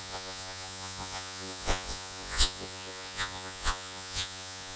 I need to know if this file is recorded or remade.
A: remade